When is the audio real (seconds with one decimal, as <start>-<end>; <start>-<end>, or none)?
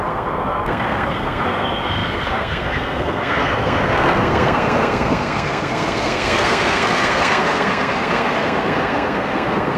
none